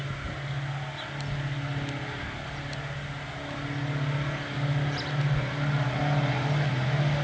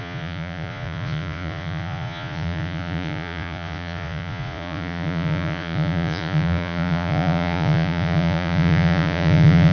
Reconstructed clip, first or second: second